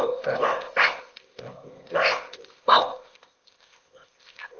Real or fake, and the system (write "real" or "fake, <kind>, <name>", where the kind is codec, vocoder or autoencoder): fake, codec, ZipCodec